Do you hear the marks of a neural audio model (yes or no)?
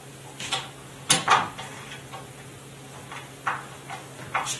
no